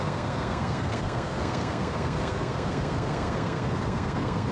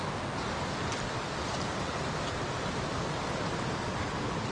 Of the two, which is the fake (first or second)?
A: first